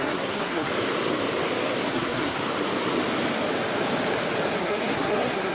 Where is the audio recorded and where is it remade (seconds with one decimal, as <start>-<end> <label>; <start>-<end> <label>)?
0.0-0.7 remade; 0.7-1.9 recorded; 1.9-2.4 remade; 2.4-4.6 recorded; 4.6-5.5 remade